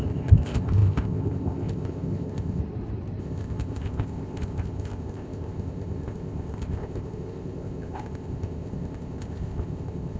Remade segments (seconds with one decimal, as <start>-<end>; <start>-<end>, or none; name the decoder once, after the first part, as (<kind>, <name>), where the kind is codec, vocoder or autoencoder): 0.0-2.6 (codec, ZipCodec); 3.2-10.2

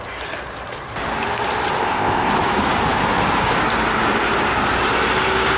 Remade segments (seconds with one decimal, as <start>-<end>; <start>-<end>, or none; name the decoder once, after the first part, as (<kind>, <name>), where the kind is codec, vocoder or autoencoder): 1.8-2.3 (codec, ZipCodec)

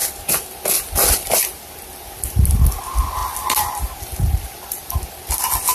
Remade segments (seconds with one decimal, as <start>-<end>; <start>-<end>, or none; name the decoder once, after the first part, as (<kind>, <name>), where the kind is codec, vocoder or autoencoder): none

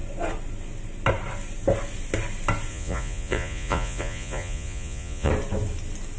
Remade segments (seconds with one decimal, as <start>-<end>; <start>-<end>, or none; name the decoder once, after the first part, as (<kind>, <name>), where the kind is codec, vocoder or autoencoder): 2.7-5.3 (vocoder, Vocos)

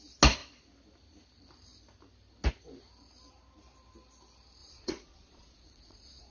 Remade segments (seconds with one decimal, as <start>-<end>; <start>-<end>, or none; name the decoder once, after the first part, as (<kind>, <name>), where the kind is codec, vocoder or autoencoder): 4.6-6.3 (vocoder, Vocos)

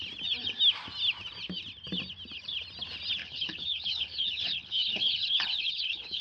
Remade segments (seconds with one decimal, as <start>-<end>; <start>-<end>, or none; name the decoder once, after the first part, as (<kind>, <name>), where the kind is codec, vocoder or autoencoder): 3.2-6.2 (codec, HILCodec)

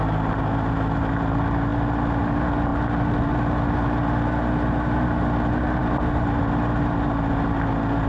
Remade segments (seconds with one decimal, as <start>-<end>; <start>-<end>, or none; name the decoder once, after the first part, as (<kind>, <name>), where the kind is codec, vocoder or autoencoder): none

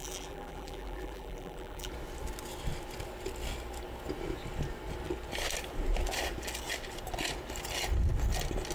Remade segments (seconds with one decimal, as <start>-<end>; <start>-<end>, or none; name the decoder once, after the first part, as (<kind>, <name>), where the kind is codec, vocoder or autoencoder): 0.0-1.9 (vocoder, BigVGAN v2)